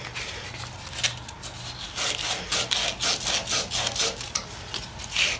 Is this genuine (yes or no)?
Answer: yes